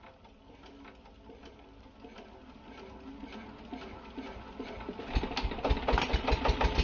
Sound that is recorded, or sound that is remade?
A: recorded